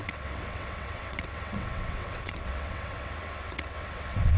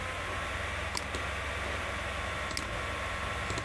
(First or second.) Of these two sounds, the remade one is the first